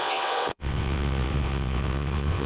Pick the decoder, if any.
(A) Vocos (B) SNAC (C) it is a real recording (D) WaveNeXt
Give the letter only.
D